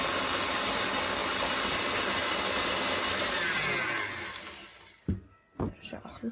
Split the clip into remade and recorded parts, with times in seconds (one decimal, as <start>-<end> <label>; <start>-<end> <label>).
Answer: 0.0-6.3 recorded